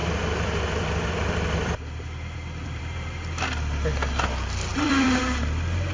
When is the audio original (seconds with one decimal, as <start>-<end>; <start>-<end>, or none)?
3.3-4.7; 5.2-5.9